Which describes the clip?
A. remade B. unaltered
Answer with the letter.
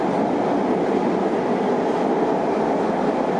A